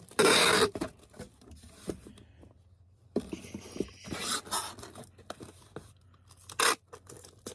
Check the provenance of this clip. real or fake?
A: real